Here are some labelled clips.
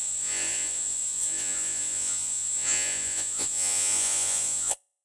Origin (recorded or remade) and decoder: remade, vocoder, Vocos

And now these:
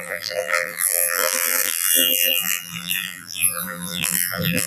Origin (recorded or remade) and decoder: remade, vocoder, BigVGAN v2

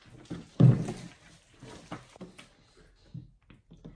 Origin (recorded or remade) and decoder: recorded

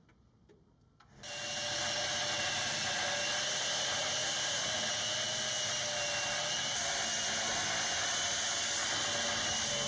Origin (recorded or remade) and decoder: recorded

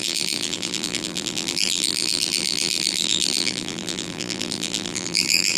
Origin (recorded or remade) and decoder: remade, vocoder, BigVGAN v2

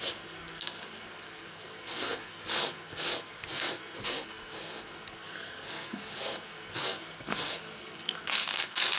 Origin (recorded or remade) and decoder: remade, codec, SNAC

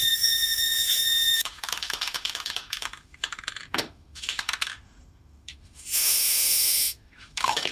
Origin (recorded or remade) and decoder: remade, autoencoder, DAC-VAE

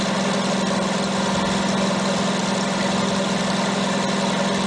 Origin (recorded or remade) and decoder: recorded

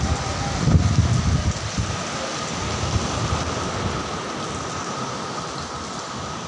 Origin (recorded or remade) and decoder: recorded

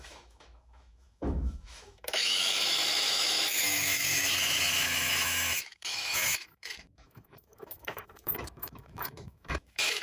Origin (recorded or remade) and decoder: remade, autoencoder, DAC-VAE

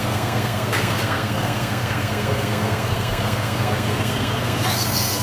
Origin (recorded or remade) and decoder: remade, codec, SNAC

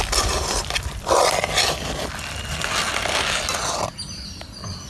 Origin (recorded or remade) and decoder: recorded